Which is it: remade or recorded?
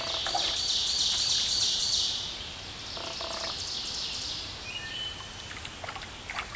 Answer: recorded